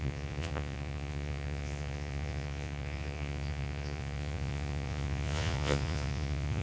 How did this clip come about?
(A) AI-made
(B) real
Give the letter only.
A